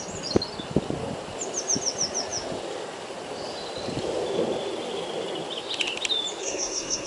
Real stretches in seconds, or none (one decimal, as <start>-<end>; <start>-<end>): 0.0-6.4